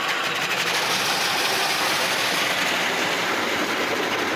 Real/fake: real